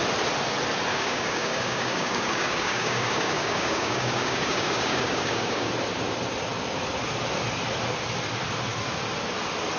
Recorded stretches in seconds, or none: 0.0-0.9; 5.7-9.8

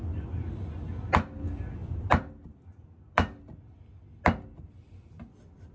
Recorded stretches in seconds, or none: 0.0-1.8; 2.3-5.7

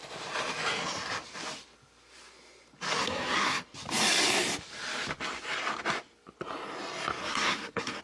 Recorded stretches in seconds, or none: 0.0-3.0; 3.6-7.2

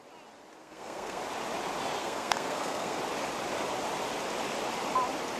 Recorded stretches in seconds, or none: 0.0-0.6; 1.2-2.0; 3.0-5.4

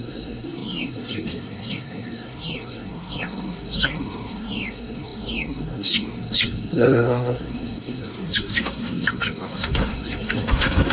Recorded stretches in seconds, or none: none

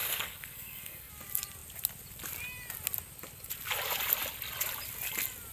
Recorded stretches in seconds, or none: 1.1-5.5